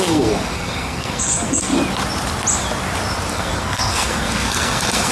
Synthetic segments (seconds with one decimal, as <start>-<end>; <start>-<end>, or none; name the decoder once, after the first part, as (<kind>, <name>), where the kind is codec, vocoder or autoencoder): 0.0-1.7 (codec, SNAC); 3.3-5.1